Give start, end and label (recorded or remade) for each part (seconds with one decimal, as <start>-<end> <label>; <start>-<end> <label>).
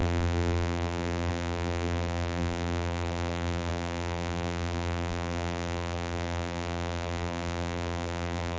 0.0-8.6 remade